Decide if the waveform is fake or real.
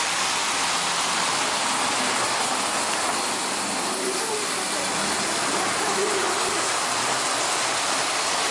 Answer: real